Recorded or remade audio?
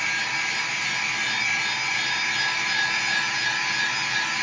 recorded